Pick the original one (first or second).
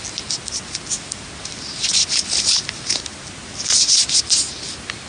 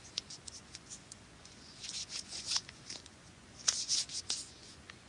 first